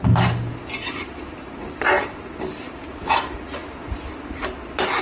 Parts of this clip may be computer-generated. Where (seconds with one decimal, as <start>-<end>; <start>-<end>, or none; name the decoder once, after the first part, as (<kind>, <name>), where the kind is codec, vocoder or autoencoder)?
none